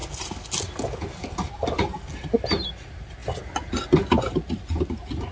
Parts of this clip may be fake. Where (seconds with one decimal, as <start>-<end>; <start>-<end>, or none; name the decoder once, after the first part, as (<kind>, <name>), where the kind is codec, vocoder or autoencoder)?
none

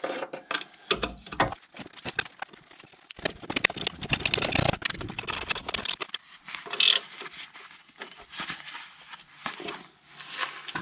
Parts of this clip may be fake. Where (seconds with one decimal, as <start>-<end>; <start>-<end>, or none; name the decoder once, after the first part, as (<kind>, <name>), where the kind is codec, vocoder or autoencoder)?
none

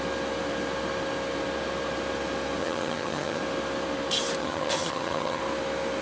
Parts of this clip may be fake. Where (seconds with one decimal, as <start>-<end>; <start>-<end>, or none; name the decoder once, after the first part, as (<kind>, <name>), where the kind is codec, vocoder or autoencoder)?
2.6-3.4 (vocoder, HiFi-GAN); 4.4-5.4